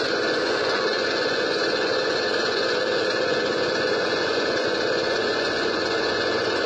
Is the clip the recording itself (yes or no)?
no